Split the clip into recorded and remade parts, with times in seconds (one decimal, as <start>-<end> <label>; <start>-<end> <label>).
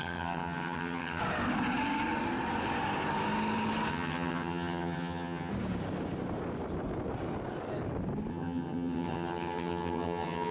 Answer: 0.0-1.2 remade; 1.2-3.9 recorded; 3.9-5.5 remade; 5.5-8.3 recorded; 8.3-10.5 remade